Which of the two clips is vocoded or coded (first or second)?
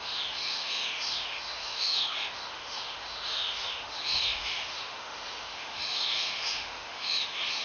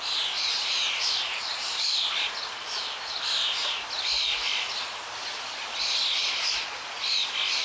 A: first